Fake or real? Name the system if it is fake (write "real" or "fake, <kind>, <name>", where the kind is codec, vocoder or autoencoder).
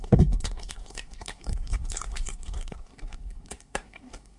fake, codec, SNAC